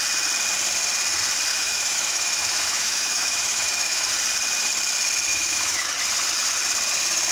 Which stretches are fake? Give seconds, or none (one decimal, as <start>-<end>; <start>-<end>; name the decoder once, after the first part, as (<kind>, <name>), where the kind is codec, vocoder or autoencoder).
1.5-4.1 (autoencoder, DAC-VAE); 5.3-5.9